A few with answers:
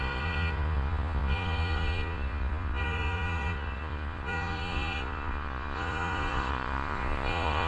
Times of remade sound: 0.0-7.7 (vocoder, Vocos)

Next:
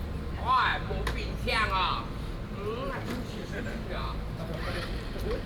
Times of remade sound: 3.4-4.7 (vocoder, BigVGAN v2)

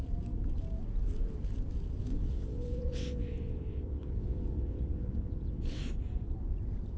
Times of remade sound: 2.1-5.8 (vocoder, WaveNeXt)

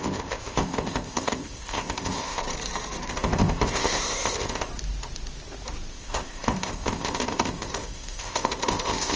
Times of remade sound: 0.0-2.4 (codec, ZipCodec); 3.1-4.7; 5.9-9.2

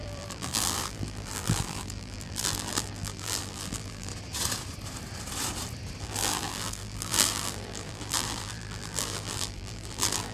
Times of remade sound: 0.0-4.1 (vocoder, BigVGAN v2); 6.0-10.3

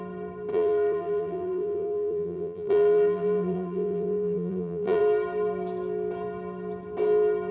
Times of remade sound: 0.5-5.0 (vocoder, BigVGAN v2)

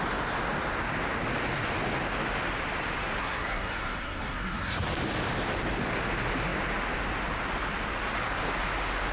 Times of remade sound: 3.2-4.8 (codec, SNAC)

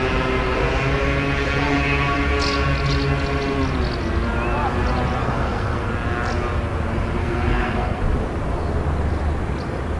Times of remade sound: 5.2-5.9 (codec, SNAC); 7.2-8.0